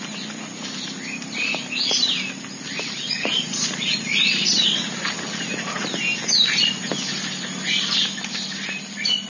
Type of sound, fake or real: real